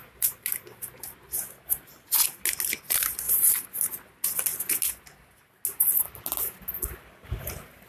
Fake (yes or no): no